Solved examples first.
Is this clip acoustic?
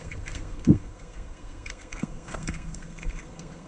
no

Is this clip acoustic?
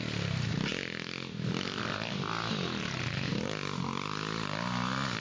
yes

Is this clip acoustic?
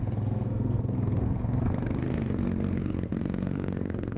no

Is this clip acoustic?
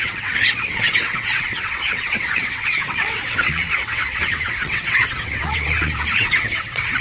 no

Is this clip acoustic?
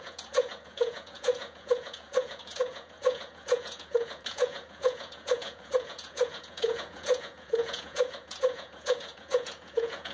no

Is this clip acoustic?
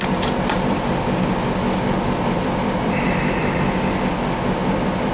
no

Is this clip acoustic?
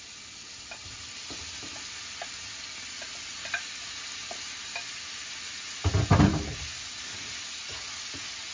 yes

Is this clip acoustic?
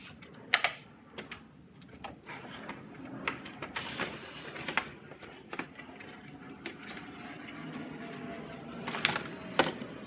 yes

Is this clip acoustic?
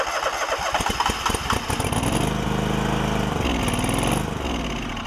yes